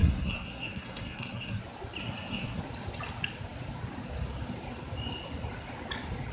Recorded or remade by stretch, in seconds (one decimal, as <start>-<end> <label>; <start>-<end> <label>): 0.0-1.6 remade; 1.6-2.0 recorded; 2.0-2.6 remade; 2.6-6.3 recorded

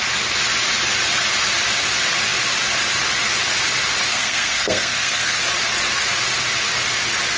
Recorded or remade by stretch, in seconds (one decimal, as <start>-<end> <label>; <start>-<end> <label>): 0.0-4.1 recorded; 4.1-5.4 remade; 5.4-7.4 recorded

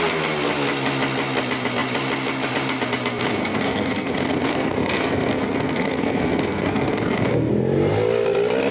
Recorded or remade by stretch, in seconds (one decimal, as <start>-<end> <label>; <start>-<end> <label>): 0.0-3.4 recorded; 3.4-4.1 remade; 4.1-4.5 recorded; 4.5-7.5 remade; 7.5-8.7 recorded

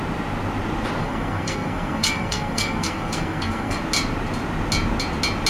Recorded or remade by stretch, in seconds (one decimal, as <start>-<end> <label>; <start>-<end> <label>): 0.0-1.0 recorded; 1.0-3.8 remade; 3.8-5.5 recorded